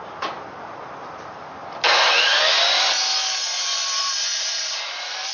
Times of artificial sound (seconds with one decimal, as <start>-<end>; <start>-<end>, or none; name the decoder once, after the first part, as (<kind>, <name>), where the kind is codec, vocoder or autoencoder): 0.0-2.3 (vocoder, BigVGAN v2); 3.6-5.3